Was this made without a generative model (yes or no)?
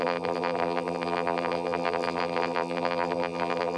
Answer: no